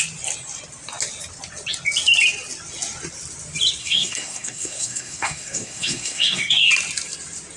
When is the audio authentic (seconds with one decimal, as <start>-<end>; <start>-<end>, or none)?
0.0-3.8; 6.7-7.6